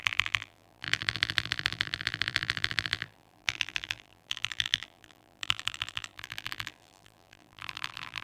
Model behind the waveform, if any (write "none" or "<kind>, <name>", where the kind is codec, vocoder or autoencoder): vocoder, BigVGAN v2